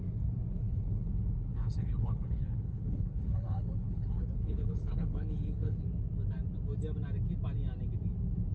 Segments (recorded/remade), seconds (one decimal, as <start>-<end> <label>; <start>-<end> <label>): 0.0-0.5 recorded; 0.5-1.1 remade; 1.1-1.5 recorded; 1.5-5.8 remade; 5.8-8.5 recorded